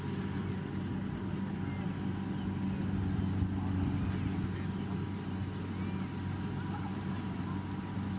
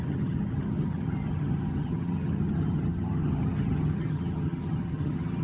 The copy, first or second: second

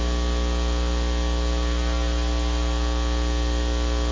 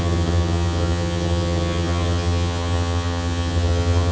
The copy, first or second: second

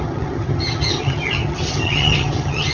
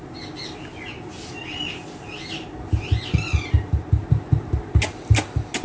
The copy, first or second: first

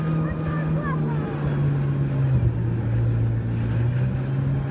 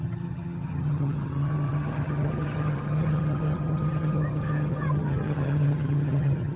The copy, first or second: second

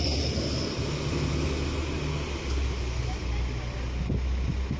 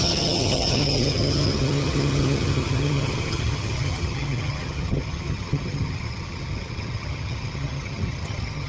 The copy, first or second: second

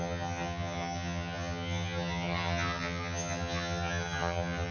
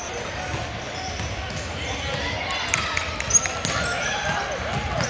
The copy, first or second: first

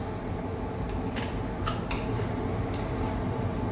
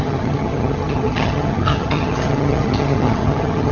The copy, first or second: second